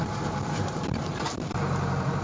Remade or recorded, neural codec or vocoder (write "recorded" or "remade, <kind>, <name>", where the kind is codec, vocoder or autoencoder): remade, vocoder, BigVGAN v2